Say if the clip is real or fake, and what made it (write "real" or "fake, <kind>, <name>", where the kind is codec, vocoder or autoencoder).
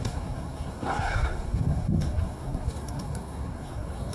fake, codec, SNAC